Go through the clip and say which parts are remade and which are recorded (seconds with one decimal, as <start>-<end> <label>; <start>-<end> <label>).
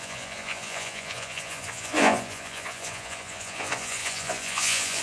0.0-5.0 remade